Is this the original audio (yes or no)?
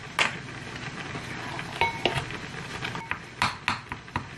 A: yes